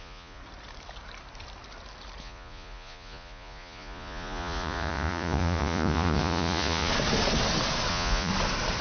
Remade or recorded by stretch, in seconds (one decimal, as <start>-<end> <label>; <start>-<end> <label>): 0.0-0.4 remade; 0.4-2.2 recorded; 2.2-6.9 remade; 6.9-7.9 recorded; 7.9-8.3 remade; 8.3-8.8 recorded